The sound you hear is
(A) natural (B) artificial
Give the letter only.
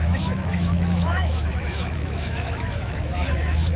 B